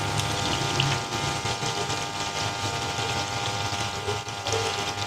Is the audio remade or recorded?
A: recorded